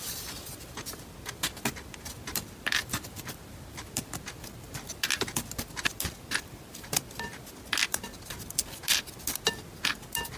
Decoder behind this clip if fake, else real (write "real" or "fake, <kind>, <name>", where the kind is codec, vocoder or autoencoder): real